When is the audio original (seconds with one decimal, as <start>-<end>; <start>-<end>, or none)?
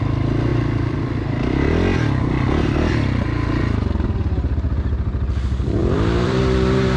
0.0-0.5; 1.7-5.8; 6.4-7.0